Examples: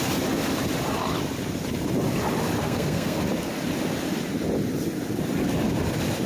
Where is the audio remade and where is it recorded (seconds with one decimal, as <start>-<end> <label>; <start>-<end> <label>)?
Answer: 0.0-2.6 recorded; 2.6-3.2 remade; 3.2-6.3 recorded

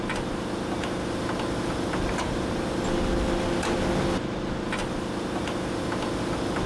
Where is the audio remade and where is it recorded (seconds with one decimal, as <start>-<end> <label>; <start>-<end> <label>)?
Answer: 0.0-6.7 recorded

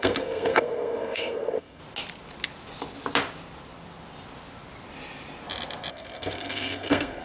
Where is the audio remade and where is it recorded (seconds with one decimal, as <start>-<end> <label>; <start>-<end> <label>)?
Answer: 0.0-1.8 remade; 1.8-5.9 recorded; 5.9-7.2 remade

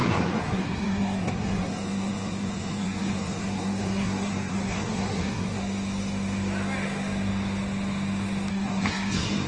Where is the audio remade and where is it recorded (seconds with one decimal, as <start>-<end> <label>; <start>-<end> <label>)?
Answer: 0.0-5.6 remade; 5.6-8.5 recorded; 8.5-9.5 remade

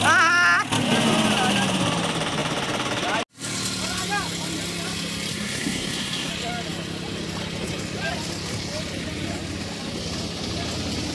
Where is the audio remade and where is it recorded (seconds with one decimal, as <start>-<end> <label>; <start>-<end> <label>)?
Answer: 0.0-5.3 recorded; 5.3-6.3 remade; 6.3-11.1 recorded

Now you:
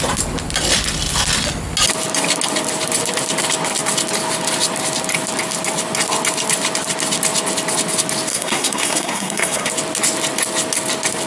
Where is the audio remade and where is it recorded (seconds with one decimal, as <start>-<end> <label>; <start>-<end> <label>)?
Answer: 0.0-8.3 recorded; 8.3-9.7 remade; 9.7-11.3 recorded

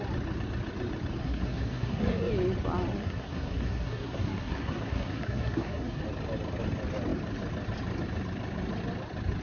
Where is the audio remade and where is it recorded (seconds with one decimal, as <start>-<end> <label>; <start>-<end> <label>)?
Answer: 0.0-1.2 recorded; 1.2-2.3 remade; 2.3-3.0 recorded; 3.0-6.0 remade; 6.0-9.4 recorded

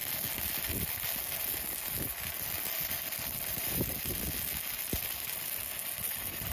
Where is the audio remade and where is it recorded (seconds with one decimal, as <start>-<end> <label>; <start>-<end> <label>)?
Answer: 0.0-6.5 recorded